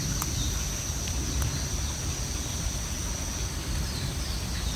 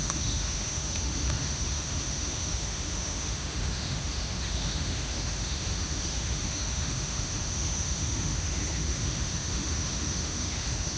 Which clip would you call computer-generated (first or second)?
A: second